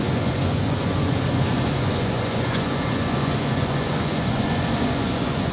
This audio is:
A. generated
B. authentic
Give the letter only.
A